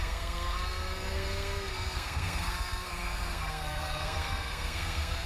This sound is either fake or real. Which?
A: fake